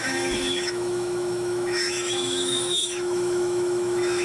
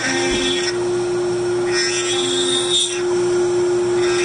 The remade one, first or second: first